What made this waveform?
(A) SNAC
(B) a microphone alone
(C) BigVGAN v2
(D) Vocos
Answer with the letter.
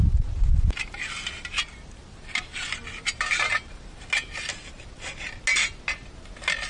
B